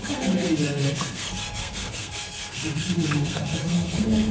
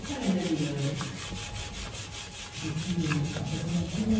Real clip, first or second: second